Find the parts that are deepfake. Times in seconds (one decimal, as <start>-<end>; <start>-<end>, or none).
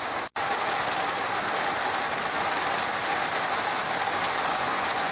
4.5-5.1